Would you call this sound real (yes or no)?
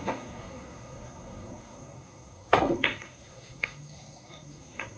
no